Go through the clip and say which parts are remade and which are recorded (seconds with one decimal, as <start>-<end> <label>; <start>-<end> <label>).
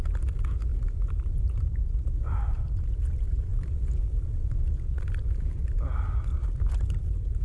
0.0-0.7 recorded; 0.7-2.5 remade; 2.5-3.5 recorded; 3.5-5.4 remade; 5.4-6.3 recorded; 6.3-7.4 remade